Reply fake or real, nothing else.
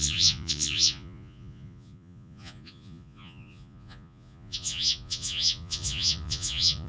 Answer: fake